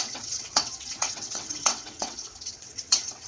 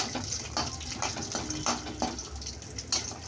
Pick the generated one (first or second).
first